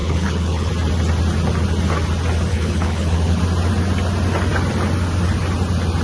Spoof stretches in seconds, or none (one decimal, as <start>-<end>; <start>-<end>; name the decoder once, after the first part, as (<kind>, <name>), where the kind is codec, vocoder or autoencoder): 0.0-0.7 (codec, HILCodec); 2.5-3.4